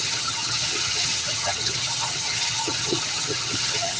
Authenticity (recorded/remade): remade